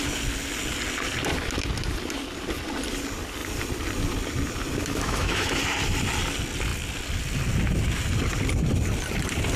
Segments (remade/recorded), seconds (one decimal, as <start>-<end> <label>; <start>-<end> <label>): 0.0-4.8 recorded; 4.8-5.6 remade; 5.6-9.6 recorded